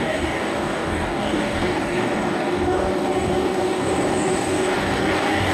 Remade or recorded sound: remade